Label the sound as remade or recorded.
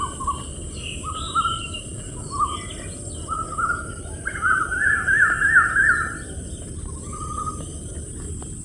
recorded